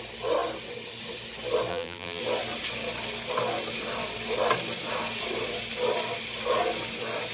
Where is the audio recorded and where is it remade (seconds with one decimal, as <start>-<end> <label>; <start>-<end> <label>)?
0.0-1.7 recorded; 1.7-2.2 remade; 2.2-7.3 recorded